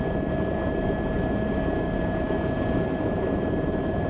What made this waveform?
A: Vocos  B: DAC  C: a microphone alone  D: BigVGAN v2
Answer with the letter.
C